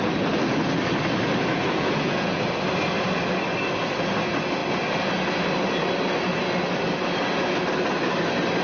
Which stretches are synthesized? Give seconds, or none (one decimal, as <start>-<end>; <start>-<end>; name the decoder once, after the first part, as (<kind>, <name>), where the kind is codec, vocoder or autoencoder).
1.5-2.4 (vocoder, Vocos)